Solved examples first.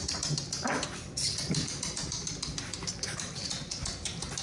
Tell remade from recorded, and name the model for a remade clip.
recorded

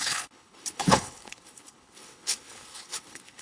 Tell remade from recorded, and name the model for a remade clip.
remade, codec, HILCodec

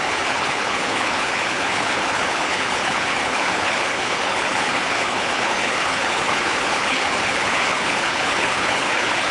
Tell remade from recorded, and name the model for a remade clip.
remade, codec, HILCodec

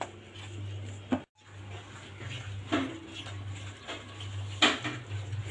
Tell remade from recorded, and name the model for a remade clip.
recorded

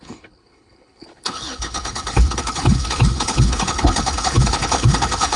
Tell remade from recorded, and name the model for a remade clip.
remade, codec, HILCodec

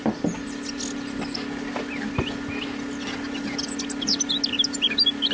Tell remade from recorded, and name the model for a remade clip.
recorded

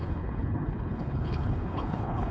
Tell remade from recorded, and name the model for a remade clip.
remade, codec, HILCodec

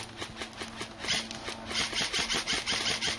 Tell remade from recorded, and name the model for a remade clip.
recorded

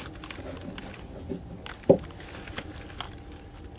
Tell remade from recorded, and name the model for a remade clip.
recorded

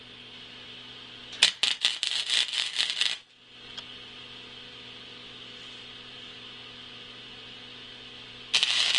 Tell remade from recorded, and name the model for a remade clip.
recorded